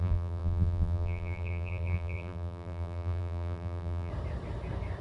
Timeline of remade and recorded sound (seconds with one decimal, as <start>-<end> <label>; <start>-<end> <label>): 0.0-4.1 remade; 4.1-5.0 recorded